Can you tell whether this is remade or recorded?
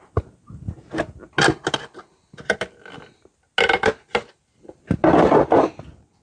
recorded